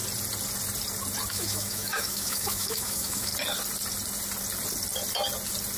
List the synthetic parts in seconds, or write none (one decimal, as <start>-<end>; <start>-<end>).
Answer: 1.3-3.3